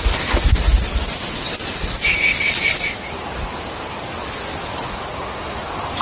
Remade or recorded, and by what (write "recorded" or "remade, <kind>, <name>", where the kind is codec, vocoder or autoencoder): recorded